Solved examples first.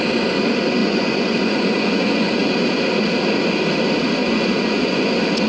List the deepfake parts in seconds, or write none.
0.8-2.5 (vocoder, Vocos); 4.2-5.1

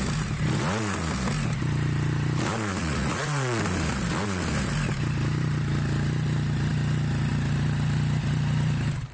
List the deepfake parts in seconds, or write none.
2.8-3.6 (vocoder, Vocos)

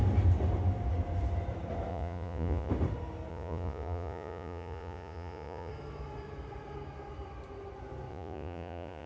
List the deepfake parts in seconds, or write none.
1.9-2.7 (vocoder, Vocos); 3.3-5.7; 8.1-9.1

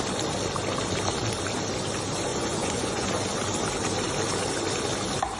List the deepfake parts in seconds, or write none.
2.3-3.1 (vocoder, Vocos)

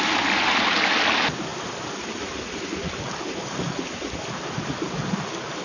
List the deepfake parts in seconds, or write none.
none

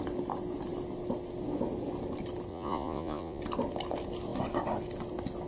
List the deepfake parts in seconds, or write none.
2.5-3.4 (vocoder, Vocos)

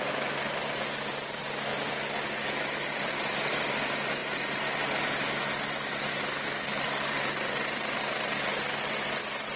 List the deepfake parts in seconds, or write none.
none

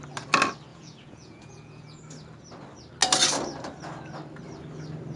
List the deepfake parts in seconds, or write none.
0.7-2.0 (vocoder, Vocos)